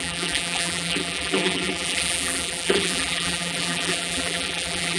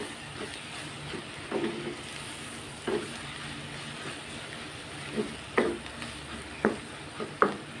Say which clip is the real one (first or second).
second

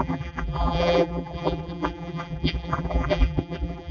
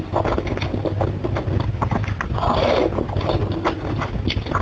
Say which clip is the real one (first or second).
second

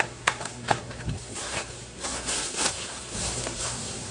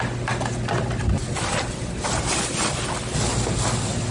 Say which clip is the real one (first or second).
second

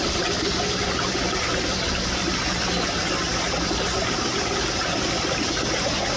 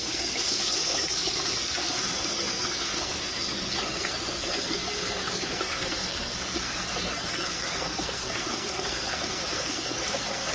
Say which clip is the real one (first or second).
first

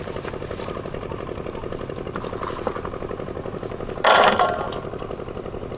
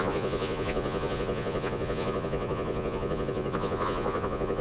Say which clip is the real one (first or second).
first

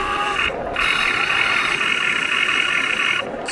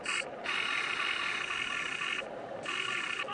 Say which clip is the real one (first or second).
second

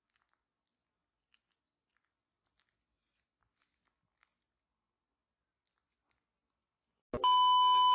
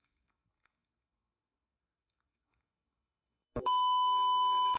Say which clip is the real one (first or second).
first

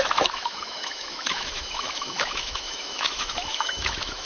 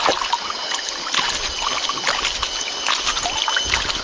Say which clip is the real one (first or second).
second